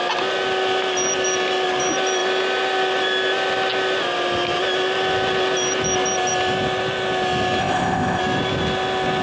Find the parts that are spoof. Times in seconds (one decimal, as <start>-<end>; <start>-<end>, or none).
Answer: 7.6-8.2